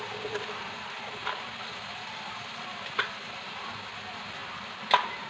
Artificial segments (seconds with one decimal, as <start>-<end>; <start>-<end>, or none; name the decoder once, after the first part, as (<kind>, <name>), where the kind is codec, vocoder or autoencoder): none